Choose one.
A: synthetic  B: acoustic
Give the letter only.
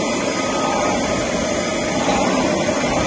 A